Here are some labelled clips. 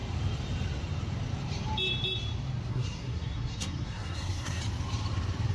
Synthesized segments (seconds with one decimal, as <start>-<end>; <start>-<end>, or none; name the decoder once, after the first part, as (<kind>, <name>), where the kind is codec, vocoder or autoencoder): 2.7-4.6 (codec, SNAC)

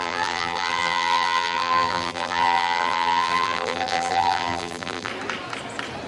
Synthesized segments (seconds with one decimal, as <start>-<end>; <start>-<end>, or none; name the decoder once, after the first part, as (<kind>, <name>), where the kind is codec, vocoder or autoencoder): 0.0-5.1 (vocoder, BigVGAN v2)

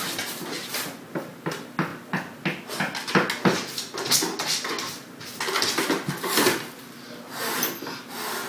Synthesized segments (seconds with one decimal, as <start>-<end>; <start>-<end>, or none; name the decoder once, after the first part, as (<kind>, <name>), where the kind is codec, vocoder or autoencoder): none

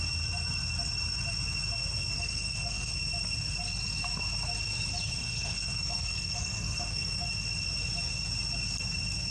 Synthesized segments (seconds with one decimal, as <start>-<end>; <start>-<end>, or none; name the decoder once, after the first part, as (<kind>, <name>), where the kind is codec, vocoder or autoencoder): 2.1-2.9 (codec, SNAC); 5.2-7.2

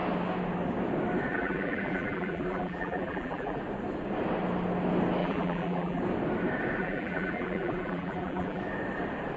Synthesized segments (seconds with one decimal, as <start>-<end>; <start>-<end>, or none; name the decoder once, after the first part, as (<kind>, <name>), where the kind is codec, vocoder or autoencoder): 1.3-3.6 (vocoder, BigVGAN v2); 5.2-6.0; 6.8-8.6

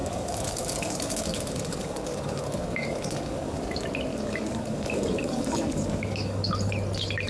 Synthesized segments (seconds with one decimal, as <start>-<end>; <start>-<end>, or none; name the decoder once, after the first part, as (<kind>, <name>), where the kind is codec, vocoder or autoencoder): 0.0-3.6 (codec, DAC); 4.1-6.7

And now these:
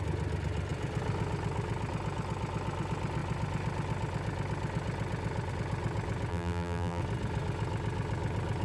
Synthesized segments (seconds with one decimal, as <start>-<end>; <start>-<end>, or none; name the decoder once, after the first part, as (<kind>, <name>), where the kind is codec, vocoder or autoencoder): 6.3-7.0 (vocoder, BigVGAN v2)

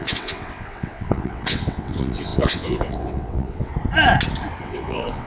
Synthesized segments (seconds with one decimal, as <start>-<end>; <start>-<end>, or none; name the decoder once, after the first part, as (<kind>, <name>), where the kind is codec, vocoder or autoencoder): 0.0-3.7 (vocoder, WaveNeXt); 4.6-5.3